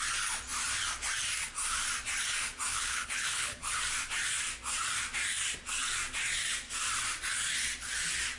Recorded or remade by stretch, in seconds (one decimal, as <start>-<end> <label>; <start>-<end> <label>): 0.0-2.7 recorded; 2.7-3.7 remade; 3.7-8.4 recorded